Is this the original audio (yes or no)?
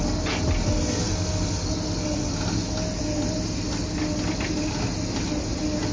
yes